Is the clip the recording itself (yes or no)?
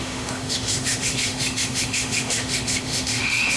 no